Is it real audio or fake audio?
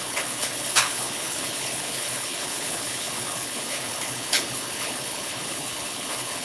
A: fake